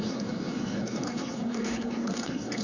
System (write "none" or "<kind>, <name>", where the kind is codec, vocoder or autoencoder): codec, SNAC